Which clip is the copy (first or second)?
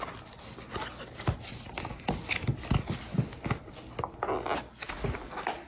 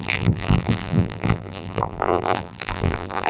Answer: second